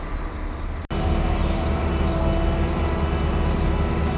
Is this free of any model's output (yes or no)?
yes